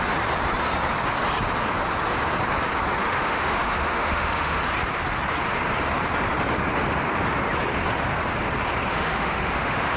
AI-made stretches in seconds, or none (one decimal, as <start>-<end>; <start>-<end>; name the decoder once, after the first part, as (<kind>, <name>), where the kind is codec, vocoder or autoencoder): 3.0-4.6 (autoencoder, DAC-VAE); 8.9-10.0